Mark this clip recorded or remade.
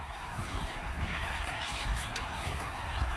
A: remade